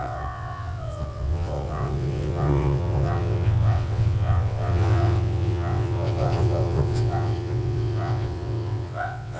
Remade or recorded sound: remade